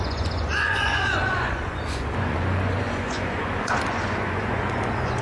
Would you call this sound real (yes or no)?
no